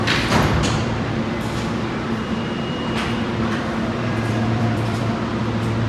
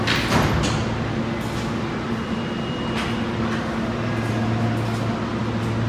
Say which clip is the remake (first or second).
first